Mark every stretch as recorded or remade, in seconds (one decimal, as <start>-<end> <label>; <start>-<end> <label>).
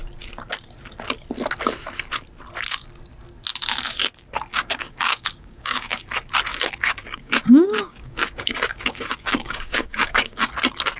0.0-4.5 recorded; 4.5-6.0 remade; 6.0-6.5 recorded; 6.5-10.5 remade; 10.5-11.0 recorded